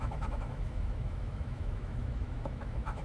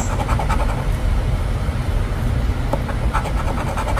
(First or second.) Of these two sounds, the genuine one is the second